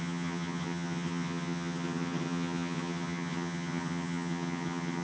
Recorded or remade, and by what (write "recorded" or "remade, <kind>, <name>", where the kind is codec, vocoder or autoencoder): remade, vocoder, HiFi-GAN